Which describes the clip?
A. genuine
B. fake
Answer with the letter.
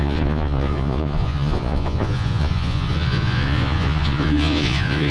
B